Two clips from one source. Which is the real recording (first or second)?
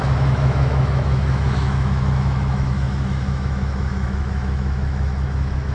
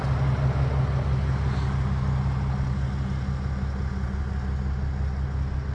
second